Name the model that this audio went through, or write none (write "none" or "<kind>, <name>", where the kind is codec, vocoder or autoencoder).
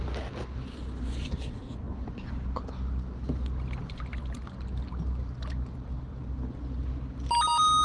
none